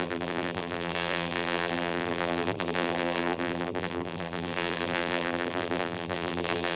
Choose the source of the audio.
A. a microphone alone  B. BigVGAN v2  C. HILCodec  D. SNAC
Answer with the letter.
B